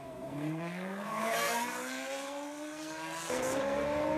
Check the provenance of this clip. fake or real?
fake